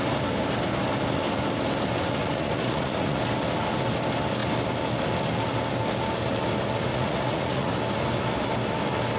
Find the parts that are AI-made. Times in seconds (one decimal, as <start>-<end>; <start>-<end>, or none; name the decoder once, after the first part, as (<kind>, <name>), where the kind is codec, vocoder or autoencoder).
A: 2.2-3.2 (vocoder, Vocos); 6.9-7.7